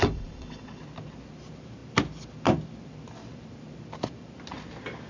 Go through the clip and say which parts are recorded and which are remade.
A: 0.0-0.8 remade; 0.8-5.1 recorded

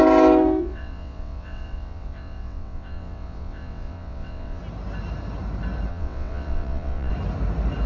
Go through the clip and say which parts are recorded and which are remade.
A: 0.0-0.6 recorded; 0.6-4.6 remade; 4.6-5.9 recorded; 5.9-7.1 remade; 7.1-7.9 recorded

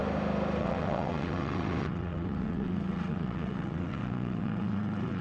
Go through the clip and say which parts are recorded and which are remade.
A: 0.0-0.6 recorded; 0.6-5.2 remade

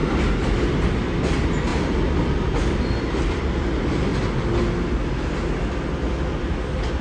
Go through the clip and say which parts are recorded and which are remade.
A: 0.0-7.0 recorded

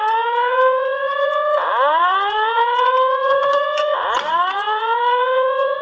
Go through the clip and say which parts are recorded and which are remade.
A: 0.0-5.8 remade

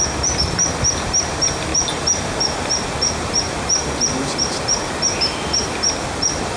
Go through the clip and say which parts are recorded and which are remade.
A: 0.0-6.6 recorded